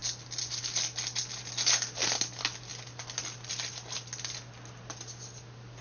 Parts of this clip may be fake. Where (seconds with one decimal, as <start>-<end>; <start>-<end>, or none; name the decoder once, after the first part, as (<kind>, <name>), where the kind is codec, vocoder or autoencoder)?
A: none